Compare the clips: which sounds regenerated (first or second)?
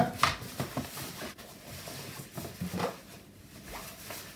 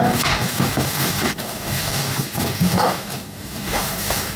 second